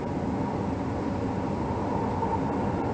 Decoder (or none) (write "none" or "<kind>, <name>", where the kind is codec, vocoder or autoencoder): none